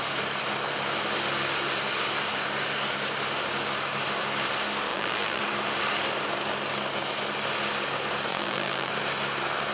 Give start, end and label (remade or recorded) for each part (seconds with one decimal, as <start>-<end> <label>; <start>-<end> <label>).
0.0-4.9 recorded; 4.9-5.4 remade; 5.4-8.3 recorded; 8.3-8.9 remade; 8.9-9.7 recorded